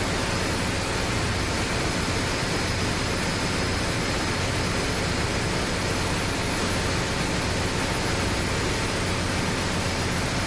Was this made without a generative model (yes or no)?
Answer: yes